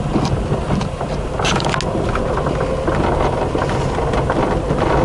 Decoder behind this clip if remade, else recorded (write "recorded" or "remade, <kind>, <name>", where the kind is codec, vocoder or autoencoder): recorded